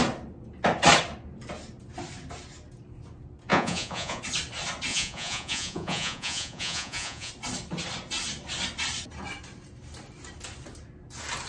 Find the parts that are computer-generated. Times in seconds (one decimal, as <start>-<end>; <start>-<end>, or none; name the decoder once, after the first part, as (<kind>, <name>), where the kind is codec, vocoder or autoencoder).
3.5-4.2 (vocoder, Vocos); 4.9-7.3